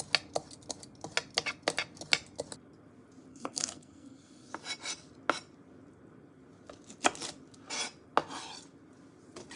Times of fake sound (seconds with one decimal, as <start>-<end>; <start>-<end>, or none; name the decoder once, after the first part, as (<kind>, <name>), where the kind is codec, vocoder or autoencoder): 3.3-4.5 (codec, SNAC)